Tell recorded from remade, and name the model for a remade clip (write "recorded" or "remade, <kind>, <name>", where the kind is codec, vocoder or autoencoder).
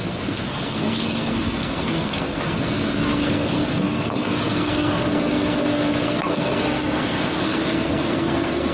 remade, codec, SNAC